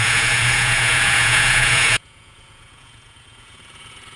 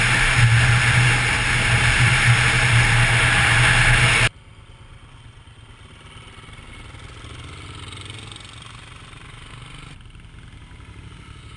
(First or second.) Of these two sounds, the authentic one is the second